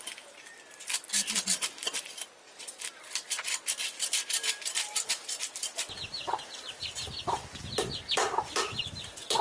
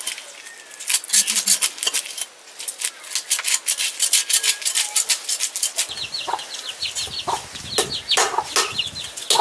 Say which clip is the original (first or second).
second